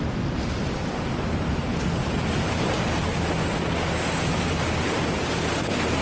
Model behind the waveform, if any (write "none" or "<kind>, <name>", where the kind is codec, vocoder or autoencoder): none